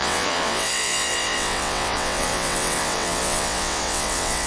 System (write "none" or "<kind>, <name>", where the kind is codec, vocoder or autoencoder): vocoder, WaveNeXt